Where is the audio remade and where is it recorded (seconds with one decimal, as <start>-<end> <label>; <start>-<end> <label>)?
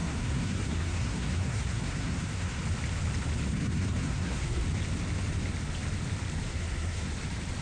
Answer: 0.0-2.6 remade; 2.6-3.5 recorded; 3.5-4.6 remade; 4.6-6.5 recorded; 6.5-7.1 remade; 7.1-7.6 recorded